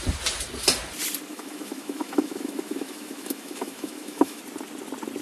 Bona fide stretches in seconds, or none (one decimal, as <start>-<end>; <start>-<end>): 0.0-1.3; 4.4-5.2